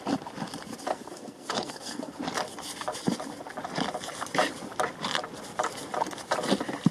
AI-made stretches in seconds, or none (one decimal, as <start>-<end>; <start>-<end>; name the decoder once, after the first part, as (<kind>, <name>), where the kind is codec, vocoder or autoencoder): 0.9-2.2 (codec, SNAC)